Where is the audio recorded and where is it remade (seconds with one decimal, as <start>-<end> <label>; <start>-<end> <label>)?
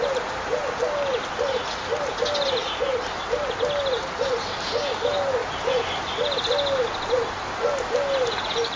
0.0-8.8 recorded